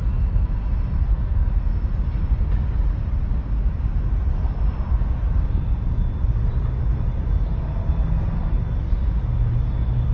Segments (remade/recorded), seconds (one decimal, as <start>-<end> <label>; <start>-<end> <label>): 0.0-1.0 recorded; 1.0-1.5 remade; 1.5-10.1 recorded